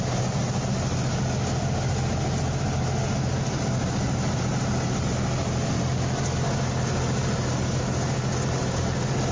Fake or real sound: real